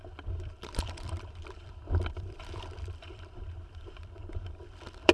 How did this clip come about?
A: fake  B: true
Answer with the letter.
A